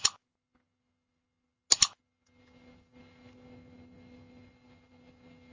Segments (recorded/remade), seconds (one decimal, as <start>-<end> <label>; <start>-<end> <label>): 0.0-5.5 recorded